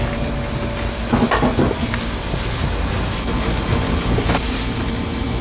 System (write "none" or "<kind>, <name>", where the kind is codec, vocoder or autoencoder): none